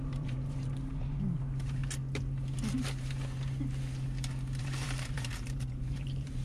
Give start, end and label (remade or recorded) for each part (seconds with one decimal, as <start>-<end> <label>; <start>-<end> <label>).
0.0-1.8 remade; 1.8-4.6 recorded; 4.6-6.4 remade